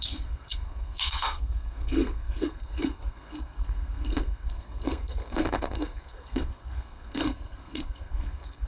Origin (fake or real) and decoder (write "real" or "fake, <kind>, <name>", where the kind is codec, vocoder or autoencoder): fake, codec, SNAC